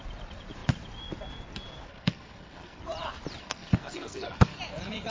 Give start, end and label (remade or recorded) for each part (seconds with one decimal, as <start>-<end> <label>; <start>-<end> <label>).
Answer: 0.0-1.9 recorded; 1.9-2.8 remade; 2.8-3.4 recorded; 3.4-4.6 remade; 4.6-5.1 recorded